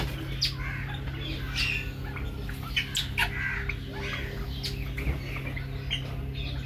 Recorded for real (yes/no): yes